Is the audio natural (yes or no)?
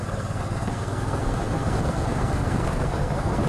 no